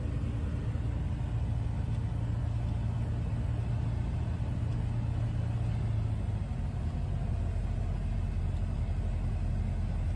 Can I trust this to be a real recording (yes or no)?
yes